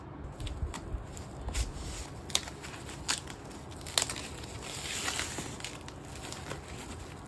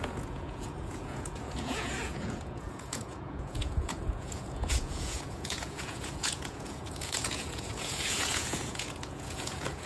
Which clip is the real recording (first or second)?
first